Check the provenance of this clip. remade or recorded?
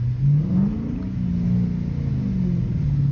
recorded